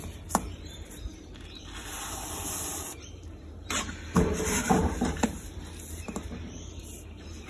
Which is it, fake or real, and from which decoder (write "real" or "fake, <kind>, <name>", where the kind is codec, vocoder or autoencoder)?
fake, vocoder, BigVGAN v2